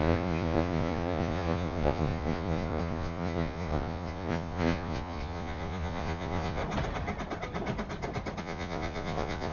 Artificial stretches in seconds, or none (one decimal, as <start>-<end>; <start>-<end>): 0.0-6.6; 8.4-9.5